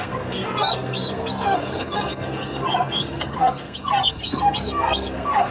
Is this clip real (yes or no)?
no